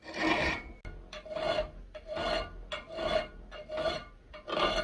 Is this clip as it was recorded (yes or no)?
yes